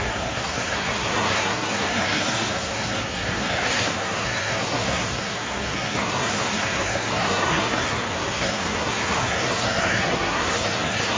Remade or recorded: remade